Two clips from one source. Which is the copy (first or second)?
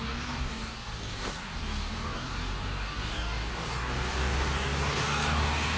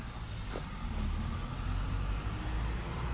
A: first